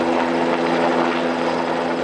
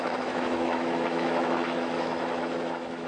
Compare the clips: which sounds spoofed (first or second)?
second